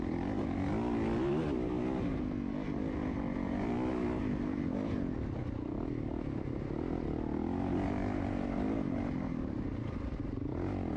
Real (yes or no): yes